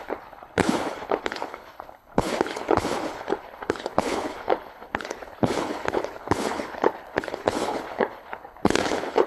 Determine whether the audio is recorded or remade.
remade